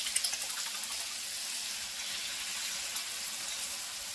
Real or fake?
real